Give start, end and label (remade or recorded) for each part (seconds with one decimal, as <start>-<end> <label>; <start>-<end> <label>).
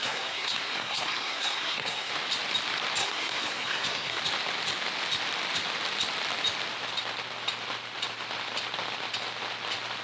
0.0-2.1 remade; 2.1-3.0 recorded; 3.0-4.2 remade; 4.2-10.0 recorded